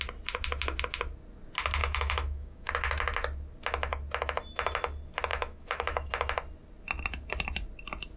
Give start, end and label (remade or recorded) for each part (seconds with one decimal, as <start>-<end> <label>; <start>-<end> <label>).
0.0-1.8 recorded; 1.8-2.7 remade; 2.7-5.3 recorded; 5.3-6.1 remade; 6.1-8.2 recorded